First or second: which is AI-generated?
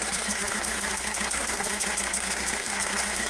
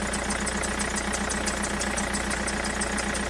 first